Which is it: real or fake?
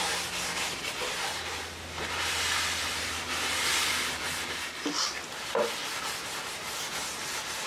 real